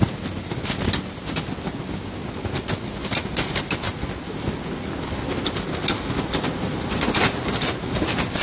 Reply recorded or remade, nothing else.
recorded